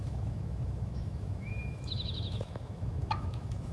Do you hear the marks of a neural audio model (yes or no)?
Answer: yes